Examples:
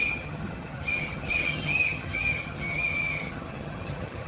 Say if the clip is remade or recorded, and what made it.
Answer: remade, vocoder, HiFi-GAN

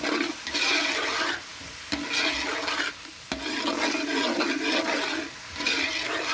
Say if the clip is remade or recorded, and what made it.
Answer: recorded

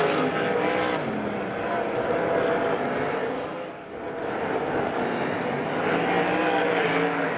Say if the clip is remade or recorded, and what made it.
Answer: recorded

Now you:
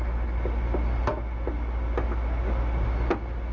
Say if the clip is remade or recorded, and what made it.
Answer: recorded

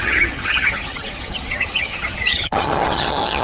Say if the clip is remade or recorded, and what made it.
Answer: remade, vocoder, HiFi-GAN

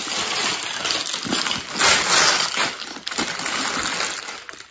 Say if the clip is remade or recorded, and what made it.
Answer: recorded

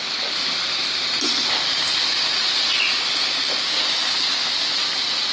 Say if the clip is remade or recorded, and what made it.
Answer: recorded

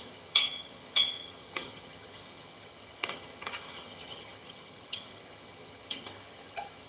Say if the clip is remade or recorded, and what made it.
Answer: remade, vocoder, HiFi-GAN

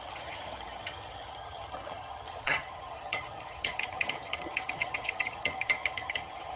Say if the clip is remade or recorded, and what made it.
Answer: remade, vocoder, HiFi-GAN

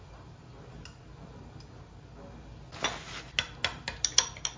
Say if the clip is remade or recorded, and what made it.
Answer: recorded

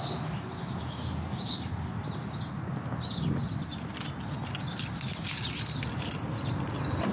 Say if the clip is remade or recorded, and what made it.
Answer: recorded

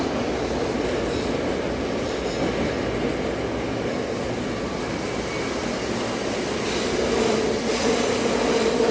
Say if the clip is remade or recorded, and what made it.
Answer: recorded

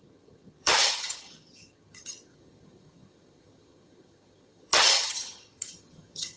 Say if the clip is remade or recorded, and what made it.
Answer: remade, vocoder, HiFi-GAN